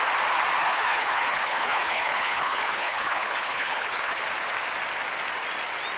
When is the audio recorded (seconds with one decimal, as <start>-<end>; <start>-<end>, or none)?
0.0-0.6; 4.2-6.0